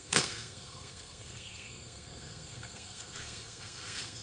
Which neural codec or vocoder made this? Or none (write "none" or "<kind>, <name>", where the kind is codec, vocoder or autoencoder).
codec, SNAC